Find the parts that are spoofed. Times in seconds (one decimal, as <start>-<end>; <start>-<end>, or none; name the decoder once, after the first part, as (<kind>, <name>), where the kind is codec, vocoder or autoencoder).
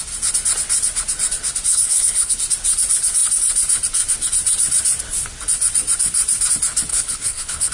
1.7-2.4 (codec, HILCodec); 6.9-7.7